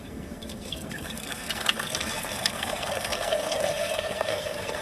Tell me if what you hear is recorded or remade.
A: remade